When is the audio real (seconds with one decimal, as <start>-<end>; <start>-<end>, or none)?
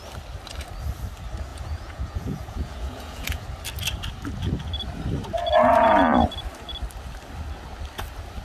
0.0-1.5; 3.4-8.4